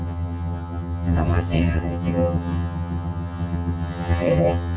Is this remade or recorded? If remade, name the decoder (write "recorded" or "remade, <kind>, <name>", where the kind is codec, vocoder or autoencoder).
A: remade, vocoder, HiFi-GAN